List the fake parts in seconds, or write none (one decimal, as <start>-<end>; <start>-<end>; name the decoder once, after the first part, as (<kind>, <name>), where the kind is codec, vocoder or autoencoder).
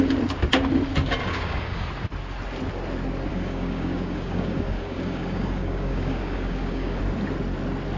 1.3-1.9 (codec, DAC); 3.3-7.0